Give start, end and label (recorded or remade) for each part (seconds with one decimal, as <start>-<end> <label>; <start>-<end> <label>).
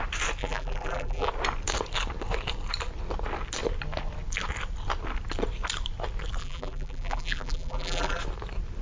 0.0-0.4 recorded; 0.4-1.3 remade; 1.3-6.4 recorded; 6.4-8.2 remade; 8.2-8.8 recorded